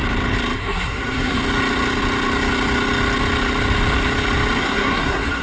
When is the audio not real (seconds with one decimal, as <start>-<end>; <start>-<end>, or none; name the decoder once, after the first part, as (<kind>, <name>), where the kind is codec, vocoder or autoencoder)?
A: 0.6-1.4 (codec, SNAC); 4.6-5.4